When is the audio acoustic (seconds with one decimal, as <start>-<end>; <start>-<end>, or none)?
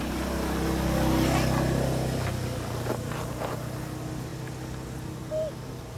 0.0-6.0